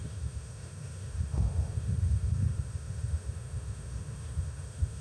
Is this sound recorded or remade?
remade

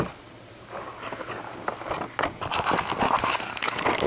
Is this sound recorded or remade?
recorded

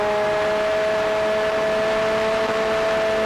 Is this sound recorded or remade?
recorded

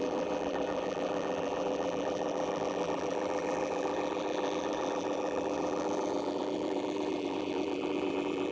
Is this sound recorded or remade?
remade